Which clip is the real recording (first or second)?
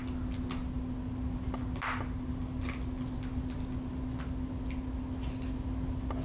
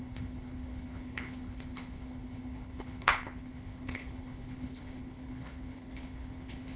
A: first